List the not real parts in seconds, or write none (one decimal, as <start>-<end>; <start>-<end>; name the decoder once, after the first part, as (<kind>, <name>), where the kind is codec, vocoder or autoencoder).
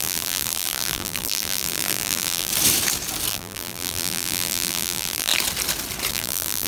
0.0-2.5 (vocoder, BigVGAN v2); 3.3-5.3; 6.1-6.7